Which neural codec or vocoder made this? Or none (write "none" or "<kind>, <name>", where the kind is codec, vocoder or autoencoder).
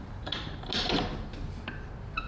none